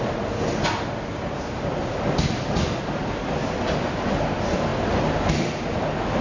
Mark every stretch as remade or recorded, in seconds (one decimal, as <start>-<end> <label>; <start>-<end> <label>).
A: 0.0-6.2 recorded